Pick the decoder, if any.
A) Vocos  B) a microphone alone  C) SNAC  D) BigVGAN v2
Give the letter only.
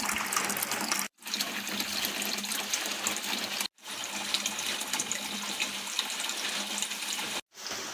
B